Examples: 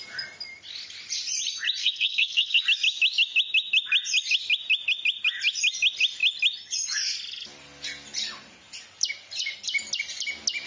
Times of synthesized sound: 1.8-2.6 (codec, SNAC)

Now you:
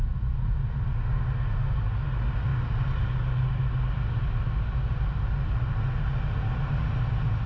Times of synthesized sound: none

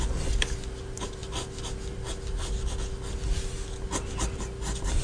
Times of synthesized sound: none

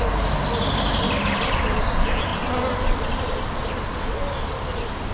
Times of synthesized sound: none

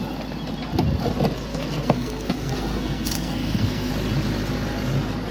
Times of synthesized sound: 1.5-3.9 (codec, SNAC)